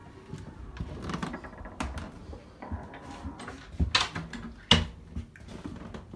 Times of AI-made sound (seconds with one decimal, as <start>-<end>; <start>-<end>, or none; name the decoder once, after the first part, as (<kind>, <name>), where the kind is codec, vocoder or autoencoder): none